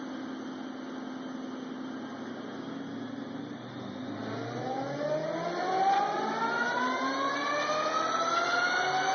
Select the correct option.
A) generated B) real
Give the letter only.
B